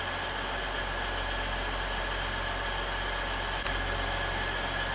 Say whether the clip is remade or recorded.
recorded